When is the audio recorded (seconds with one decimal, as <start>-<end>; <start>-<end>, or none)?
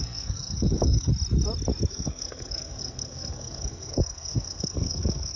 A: 1.1-1.9